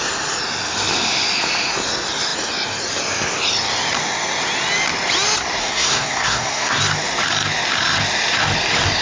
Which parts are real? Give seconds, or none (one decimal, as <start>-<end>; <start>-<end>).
0.0-5.6; 6.8-9.0